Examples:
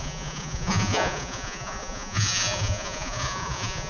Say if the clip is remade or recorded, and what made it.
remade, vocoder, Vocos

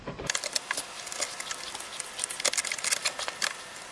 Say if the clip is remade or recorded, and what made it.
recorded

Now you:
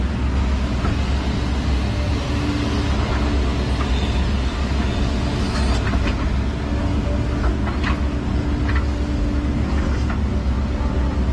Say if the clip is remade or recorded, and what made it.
recorded